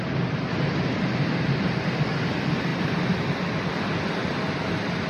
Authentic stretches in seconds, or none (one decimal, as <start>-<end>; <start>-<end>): 0.0-5.1